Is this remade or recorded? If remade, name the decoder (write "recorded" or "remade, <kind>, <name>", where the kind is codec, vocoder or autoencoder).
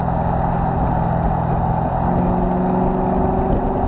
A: recorded